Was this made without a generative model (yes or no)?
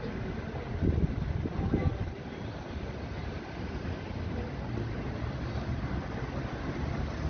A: yes